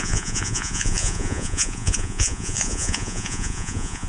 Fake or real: fake